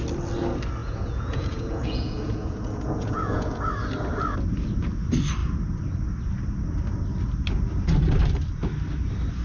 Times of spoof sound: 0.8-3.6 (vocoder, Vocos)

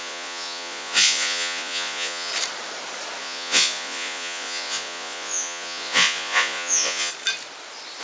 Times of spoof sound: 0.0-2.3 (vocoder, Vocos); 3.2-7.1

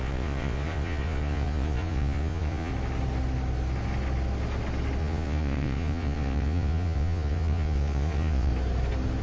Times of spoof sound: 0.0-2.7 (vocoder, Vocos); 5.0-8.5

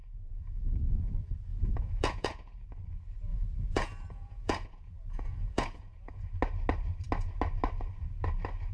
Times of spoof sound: 0.0-0.8 (vocoder, Vocos); 1.5-2.7; 3.3-6.2

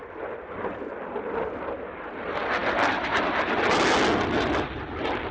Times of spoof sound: none